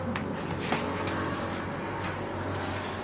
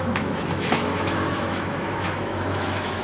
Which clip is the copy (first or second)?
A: second